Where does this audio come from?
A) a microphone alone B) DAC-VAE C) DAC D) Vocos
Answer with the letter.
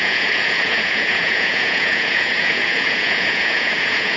D